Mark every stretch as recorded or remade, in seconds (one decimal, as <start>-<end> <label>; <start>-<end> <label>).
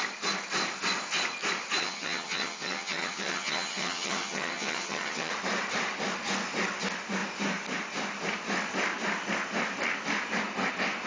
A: 0.0-1.8 recorded; 1.8-5.3 remade; 5.3-11.1 recorded